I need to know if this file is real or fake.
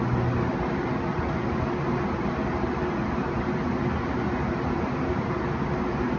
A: real